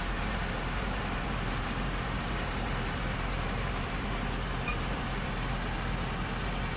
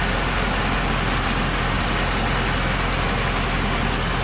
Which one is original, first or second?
second